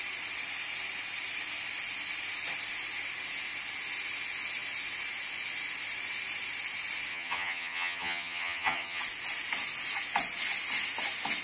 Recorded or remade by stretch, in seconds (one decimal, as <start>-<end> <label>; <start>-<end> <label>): 0.0-7.1 recorded; 7.1-9.0 remade; 9.0-11.4 recorded